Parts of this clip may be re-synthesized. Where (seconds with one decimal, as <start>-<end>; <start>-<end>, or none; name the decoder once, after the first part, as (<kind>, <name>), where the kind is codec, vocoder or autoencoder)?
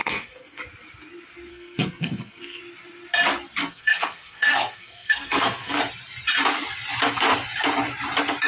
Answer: 0.0-0.6 (codec, SNAC); 1.5-2.6; 3.6-5.8